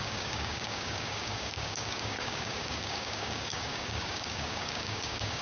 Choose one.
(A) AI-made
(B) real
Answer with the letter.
A